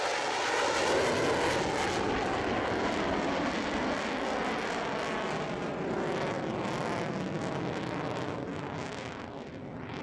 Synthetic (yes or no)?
no